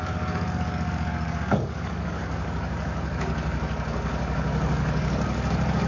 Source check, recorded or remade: remade